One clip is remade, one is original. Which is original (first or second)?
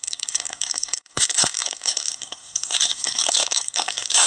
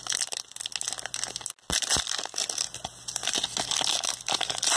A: second